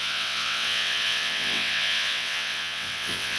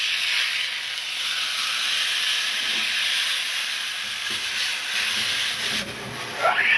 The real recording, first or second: second